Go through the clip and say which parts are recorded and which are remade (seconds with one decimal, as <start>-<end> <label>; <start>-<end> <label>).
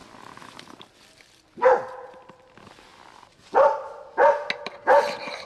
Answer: 0.0-5.5 recorded